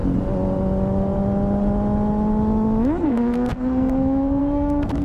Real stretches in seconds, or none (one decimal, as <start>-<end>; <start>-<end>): 0.0-3.0

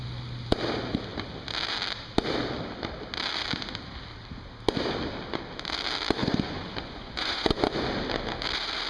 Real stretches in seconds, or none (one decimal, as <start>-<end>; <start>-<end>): 0.0-6.2; 7.9-8.9

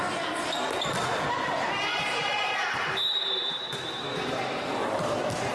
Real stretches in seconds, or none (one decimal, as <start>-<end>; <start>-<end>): 0.0-1.9; 5.1-5.5

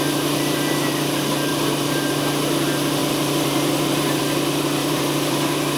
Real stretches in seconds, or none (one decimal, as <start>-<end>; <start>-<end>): 0.0-1.5; 2.1-3.0; 4.2-4.8

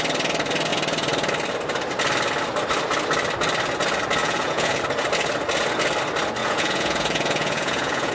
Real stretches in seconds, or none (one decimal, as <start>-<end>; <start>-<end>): 0.0-4.2; 4.8-6.4